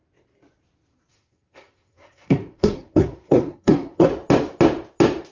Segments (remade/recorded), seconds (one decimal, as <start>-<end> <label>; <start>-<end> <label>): 0.0-1.1 recorded; 1.1-4.1 remade; 4.1-5.3 recorded